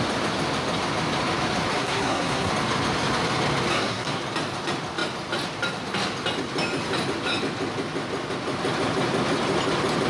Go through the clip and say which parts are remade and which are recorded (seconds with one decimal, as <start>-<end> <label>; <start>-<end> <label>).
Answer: 0.0-1.7 recorded; 1.7-2.5 remade; 2.5-3.7 recorded; 3.7-4.2 remade; 4.2-10.1 recorded